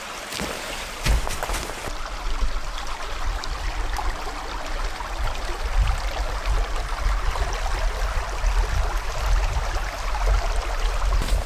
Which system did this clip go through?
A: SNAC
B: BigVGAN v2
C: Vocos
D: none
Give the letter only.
D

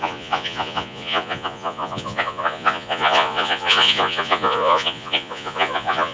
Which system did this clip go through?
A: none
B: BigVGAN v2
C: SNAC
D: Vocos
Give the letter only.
D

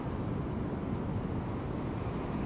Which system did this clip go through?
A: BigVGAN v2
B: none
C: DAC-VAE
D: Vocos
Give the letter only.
B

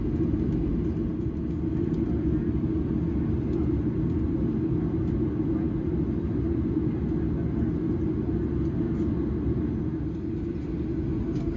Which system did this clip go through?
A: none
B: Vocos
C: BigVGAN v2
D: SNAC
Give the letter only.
A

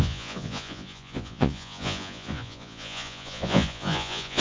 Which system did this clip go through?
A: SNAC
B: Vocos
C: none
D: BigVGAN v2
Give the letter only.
B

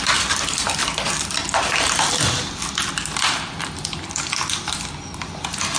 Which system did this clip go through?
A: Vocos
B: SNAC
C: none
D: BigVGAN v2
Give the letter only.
C